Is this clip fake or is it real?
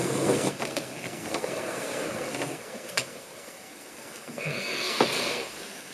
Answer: fake